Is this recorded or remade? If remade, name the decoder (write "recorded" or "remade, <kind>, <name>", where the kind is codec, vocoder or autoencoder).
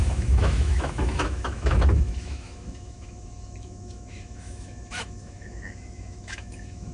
remade, autoencoder, DAC-VAE